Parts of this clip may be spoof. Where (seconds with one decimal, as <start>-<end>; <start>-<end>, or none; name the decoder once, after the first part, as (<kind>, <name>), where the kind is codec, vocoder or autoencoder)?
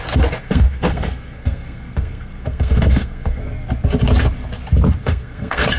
0.4-3.4 (codec, SNAC); 5.0-5.8